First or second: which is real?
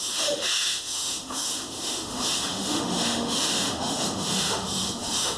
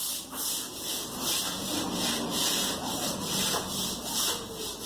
second